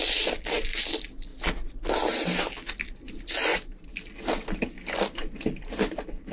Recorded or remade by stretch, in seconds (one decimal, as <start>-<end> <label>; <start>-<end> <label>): 0.0-6.3 recorded